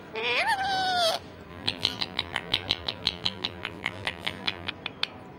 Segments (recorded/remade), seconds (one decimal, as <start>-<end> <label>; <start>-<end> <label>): 0.0-1.5 recorded; 1.5-4.7 remade; 4.7-5.4 recorded